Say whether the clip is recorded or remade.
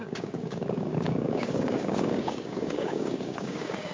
remade